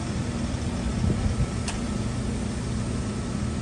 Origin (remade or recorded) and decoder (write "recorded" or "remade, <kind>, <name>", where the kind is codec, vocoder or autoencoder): recorded